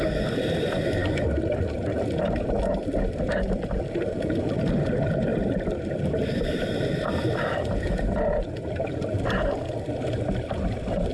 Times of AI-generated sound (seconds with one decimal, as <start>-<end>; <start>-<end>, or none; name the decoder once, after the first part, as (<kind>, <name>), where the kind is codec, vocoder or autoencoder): 5.3-8.9 (vocoder, BigVGAN v2)